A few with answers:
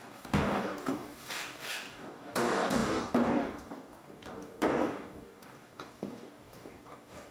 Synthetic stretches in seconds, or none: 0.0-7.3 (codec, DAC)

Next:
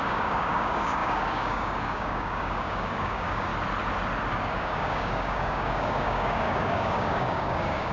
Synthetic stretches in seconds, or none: 0.0-3.5 (codec, DAC); 4.3-7.9

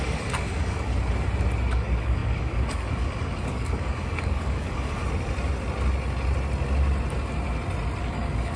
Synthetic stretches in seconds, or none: 0.0-0.9 (codec, DAC); 1.7-5.0; 8.0-8.6

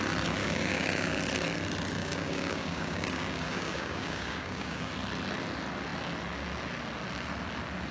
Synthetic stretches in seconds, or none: 0.4-1.2 (codec, DAC); 2.0-4.9

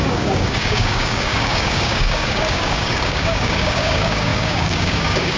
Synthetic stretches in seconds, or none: 0.0-5.4 (codec, DAC)